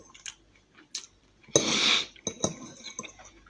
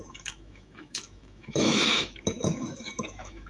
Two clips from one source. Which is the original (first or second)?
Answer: first